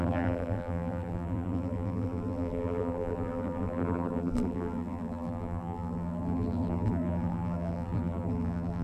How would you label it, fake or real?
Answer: fake